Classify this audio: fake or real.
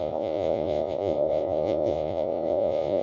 fake